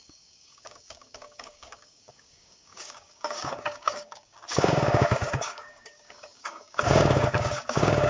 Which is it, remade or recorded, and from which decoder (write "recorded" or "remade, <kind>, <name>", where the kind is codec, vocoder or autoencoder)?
remade, codec, DAC